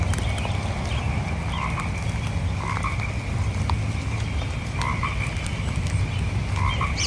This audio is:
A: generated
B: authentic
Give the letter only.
B